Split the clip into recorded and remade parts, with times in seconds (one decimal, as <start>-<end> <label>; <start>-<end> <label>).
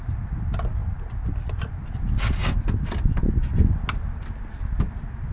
0.0-5.3 recorded